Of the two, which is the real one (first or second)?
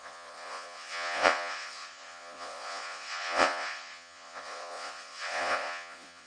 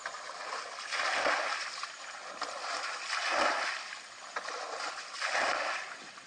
second